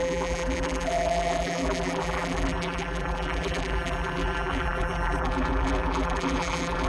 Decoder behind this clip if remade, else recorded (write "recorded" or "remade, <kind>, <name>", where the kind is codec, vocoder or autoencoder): remade, vocoder, BigVGAN v2